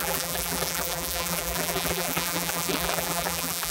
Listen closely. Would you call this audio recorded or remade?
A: remade